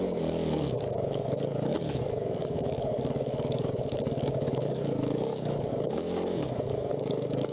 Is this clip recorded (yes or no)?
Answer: no